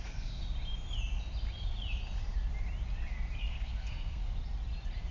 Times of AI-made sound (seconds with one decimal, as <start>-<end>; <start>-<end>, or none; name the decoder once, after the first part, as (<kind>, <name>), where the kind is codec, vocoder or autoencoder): 0.0-0.4 (codec, SNAC); 3.5-4.2